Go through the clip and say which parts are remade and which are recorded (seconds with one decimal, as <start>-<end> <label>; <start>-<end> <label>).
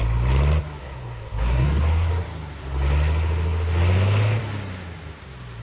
0.0-0.8 recorded; 0.8-2.1 remade; 2.1-5.6 recorded